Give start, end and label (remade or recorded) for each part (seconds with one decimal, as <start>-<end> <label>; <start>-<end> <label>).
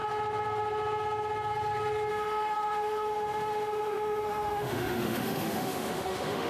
0.0-2.1 recorded; 2.1-6.5 remade